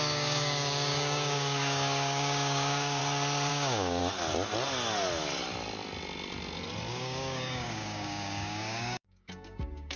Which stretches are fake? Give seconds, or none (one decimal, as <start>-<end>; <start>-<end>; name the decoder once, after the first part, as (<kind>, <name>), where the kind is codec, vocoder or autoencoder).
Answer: 0.0-3.0 (codec, DAC); 3.5-4.0; 6.9-10.0